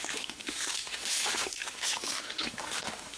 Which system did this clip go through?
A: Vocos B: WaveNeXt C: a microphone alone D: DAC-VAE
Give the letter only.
D